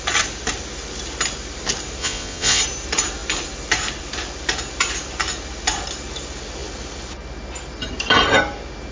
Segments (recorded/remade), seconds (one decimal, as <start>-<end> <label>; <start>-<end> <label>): 0.0-2.0 recorded; 2.0-2.6 remade; 2.6-8.9 recorded